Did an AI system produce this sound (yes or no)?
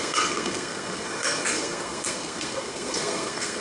yes